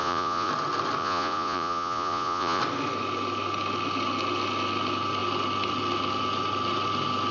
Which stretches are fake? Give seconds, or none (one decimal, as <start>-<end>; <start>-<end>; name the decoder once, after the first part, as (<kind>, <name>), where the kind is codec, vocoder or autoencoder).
0.0-0.5 (vocoder, Vocos); 1.0-2.6